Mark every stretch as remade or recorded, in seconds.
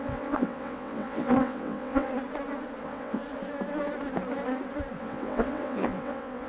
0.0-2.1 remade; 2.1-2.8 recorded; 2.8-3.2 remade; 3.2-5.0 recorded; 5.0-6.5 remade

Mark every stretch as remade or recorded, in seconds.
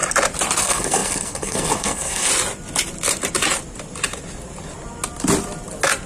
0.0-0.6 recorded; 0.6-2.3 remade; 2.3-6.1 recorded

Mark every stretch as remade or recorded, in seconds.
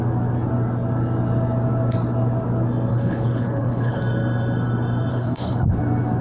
0.0-2.9 recorded; 2.9-4.0 remade; 4.0-5.1 recorded; 5.1-5.8 remade; 5.8-6.2 recorded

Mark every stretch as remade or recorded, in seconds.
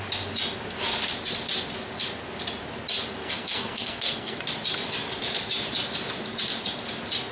0.0-3.2 recorded; 3.2-4.4 remade; 4.4-7.3 recorded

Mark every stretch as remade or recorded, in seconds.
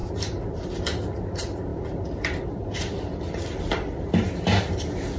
0.0-0.6 recorded; 0.6-5.2 remade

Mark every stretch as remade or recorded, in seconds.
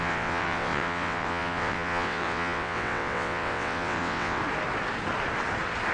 0.0-4.4 remade; 4.4-5.9 recorded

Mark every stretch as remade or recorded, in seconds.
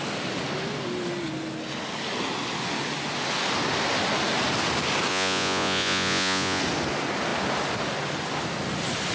0.0-5.1 recorded; 5.1-6.6 remade; 6.6-9.1 recorded